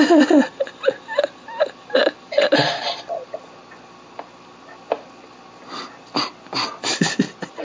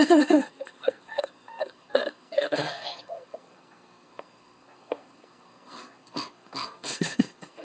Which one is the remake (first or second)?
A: second